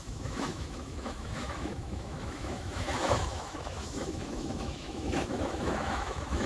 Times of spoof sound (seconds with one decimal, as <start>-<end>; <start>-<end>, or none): 0.0-6.5

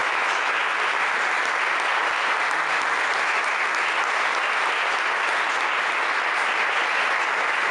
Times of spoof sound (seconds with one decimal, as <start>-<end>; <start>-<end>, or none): 0.0-0.6

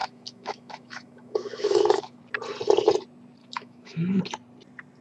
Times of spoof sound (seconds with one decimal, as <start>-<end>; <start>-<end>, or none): 0.0-2.2; 3.4-4.2

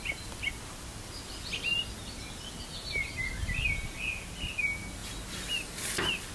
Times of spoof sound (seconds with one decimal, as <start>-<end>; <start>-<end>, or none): none

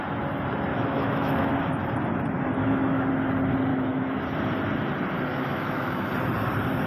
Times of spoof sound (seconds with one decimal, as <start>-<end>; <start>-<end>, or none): 0.7-1.5; 2.6-3.1; 3.7-4.2; 5.3-6.1

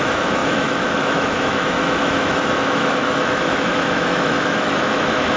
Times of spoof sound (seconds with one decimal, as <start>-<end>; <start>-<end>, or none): 0.0-5.4

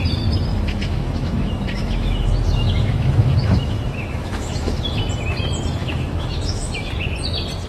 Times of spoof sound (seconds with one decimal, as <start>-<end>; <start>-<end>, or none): 0.5-5.0; 5.8-6.9

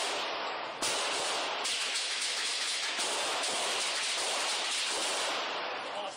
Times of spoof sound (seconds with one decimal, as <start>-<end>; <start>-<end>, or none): 1.8-3.0